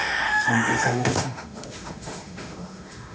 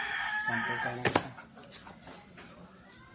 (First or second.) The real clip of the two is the second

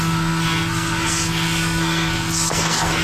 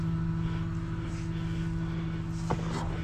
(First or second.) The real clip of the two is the second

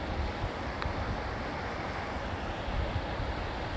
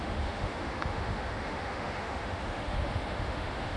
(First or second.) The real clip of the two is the first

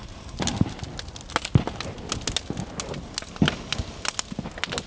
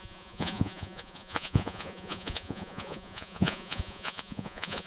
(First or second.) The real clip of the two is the first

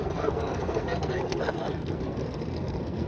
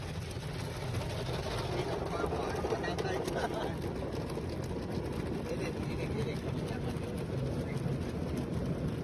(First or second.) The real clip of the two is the second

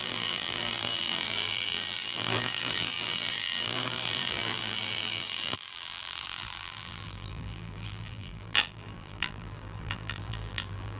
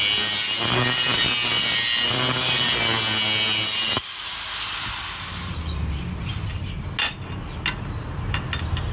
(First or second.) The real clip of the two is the second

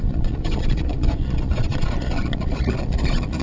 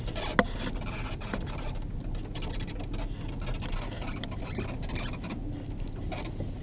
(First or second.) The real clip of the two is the second